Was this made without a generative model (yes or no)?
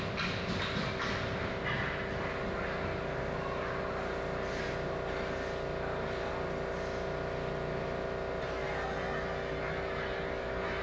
yes